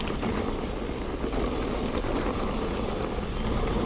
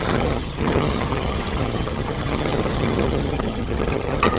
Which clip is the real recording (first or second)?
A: first